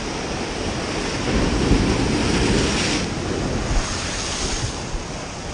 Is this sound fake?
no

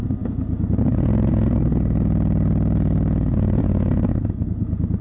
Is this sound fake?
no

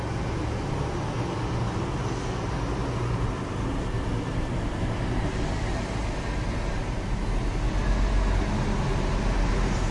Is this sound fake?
no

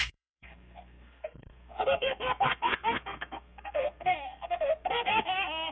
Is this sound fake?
yes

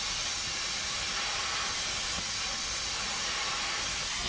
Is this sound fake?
no